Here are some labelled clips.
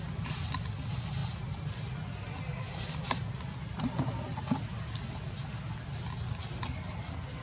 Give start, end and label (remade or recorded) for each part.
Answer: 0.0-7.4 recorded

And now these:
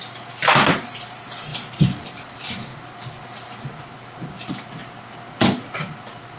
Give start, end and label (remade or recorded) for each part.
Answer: 0.0-1.5 recorded; 1.5-2.3 remade; 2.3-6.4 recorded

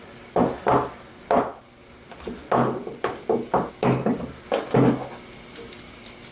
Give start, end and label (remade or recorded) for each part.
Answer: 0.0-6.3 recorded

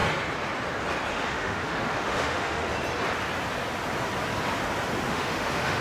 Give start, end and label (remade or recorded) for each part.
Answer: 0.0-1.1 recorded; 1.1-2.7 remade; 2.7-5.1 recorded; 5.1-5.8 remade